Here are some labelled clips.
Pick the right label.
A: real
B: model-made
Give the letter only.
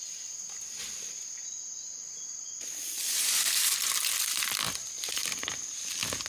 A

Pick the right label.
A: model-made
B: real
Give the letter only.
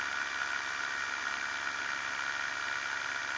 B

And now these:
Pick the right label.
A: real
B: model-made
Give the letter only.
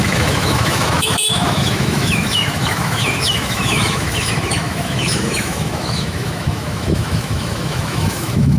B